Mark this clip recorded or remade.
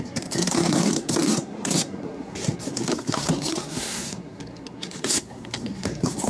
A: remade